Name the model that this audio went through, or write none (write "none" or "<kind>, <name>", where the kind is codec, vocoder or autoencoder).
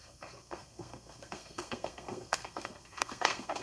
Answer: codec, SNAC